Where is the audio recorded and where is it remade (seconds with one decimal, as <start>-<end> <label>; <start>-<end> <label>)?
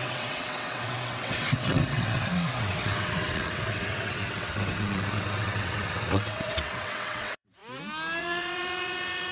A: 0.0-7.6 remade; 7.6-8.2 recorded; 8.2-9.3 remade